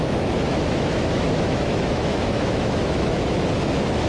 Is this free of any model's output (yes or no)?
no